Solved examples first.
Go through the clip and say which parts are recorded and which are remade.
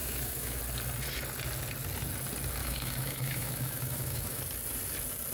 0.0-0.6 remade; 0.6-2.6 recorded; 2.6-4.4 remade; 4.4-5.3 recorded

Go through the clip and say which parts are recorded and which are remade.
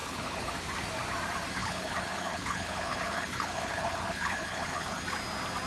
0.0-0.5 remade; 0.5-1.6 recorded; 1.6-5.0 remade; 5.0-5.7 recorded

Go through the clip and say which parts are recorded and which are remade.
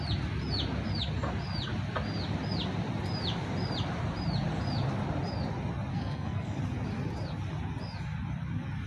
0.0-5.9 recorded; 5.9-6.6 remade; 6.6-8.9 recorded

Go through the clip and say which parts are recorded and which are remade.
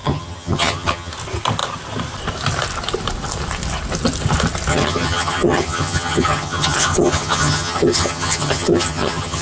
0.0-1.1 remade; 1.1-4.7 recorded; 4.7-9.4 remade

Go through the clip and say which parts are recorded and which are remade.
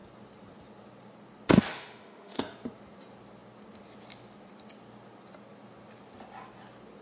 0.0-1.7 recorded; 1.7-2.4 remade; 2.4-7.0 recorded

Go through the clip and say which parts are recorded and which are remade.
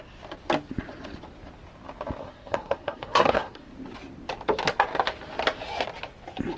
0.0-2.2 recorded; 2.2-3.7 remade; 3.7-6.6 recorded